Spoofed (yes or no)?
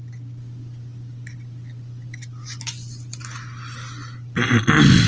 no